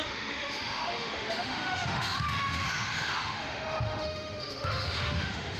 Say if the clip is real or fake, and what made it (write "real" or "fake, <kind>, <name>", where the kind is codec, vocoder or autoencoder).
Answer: fake, autoencoder, DAC-VAE